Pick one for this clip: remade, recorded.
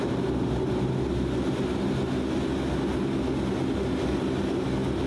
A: recorded